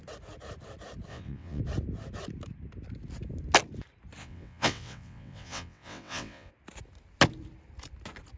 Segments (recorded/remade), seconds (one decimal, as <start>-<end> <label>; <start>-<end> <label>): 0.0-1.1 recorded; 1.1-1.6 remade; 1.6-4.2 recorded; 4.2-6.5 remade; 6.5-8.4 recorded